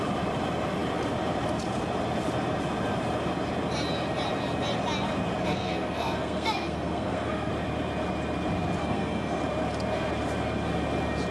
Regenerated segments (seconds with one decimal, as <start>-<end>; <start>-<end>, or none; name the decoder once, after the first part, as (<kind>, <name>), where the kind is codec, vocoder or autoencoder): 5.4-7.5 (codec, SNAC); 8.8-9.4